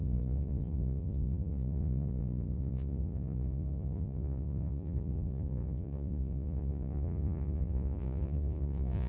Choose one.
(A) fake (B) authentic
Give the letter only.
A